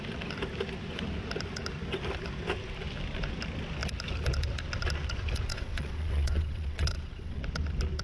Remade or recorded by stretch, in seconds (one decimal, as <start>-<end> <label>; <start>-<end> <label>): 0.0-5.5 recorded; 5.5-7.4 remade; 7.4-8.0 recorded

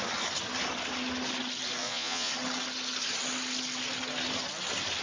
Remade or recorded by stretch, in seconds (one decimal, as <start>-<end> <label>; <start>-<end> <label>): 0.0-1.8 recorded; 1.8-2.3 remade; 2.3-5.0 recorded